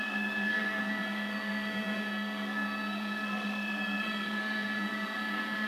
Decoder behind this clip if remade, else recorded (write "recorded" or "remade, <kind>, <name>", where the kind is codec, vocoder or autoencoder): remade, codec, SNAC